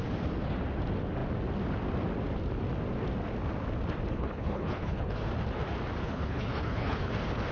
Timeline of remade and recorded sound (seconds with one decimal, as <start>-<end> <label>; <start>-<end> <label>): 0.0-4.1 recorded; 4.1-5.3 remade; 5.3-6.0 recorded; 6.0-7.1 remade; 7.1-7.5 recorded